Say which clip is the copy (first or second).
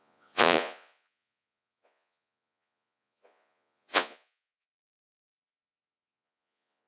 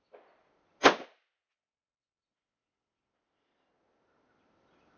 first